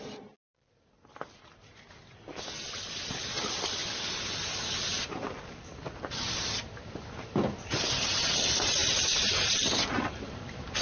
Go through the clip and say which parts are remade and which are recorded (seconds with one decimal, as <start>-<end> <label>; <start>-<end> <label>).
0.0-10.8 recorded